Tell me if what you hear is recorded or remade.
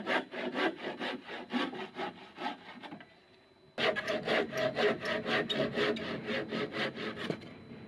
recorded